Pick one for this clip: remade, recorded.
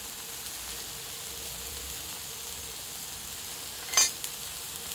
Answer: recorded